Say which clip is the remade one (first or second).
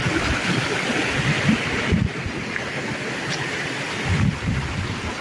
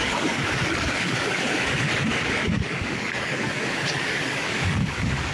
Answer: second